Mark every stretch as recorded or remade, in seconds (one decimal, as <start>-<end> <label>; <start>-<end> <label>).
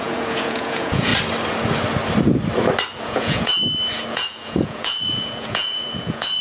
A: 0.0-1.1 remade; 1.1-3.0 recorded; 3.0-3.5 remade; 3.5-4.1 recorded; 4.1-6.4 remade